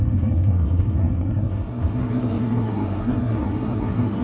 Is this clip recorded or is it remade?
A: remade